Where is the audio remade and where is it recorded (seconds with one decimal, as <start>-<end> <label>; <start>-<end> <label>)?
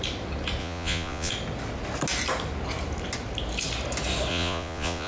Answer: 0.0-0.6 recorded; 0.6-1.3 remade; 1.3-4.3 recorded; 4.3-5.1 remade